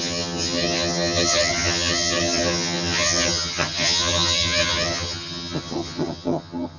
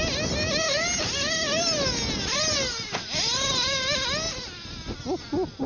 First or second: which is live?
second